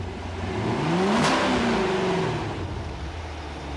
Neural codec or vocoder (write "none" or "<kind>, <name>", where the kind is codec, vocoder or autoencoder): none